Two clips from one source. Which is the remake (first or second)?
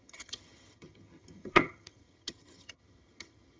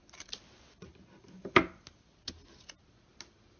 first